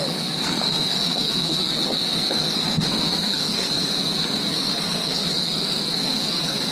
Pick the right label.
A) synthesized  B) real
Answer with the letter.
A